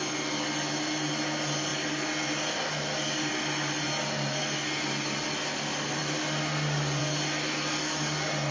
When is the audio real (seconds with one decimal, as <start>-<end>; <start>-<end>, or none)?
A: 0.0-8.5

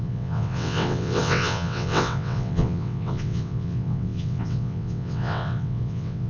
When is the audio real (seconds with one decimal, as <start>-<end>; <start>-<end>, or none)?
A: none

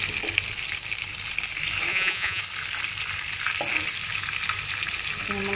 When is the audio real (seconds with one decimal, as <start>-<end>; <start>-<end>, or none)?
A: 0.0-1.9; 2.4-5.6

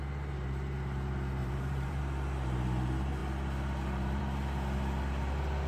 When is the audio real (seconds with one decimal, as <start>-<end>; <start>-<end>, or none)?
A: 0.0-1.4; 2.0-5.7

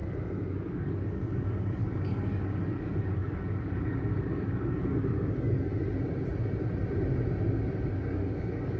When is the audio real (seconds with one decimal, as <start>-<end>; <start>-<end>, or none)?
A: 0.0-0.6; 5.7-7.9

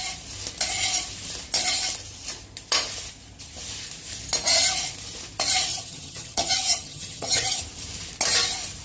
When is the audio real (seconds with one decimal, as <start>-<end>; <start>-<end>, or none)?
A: 0.0-5.7; 7.6-8.8

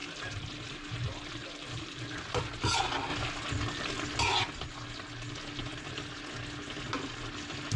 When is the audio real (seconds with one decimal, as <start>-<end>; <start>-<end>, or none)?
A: 2.4-5.7; 6.2-7.8

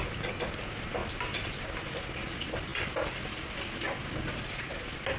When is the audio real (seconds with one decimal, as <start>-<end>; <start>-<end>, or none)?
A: 0.0-5.2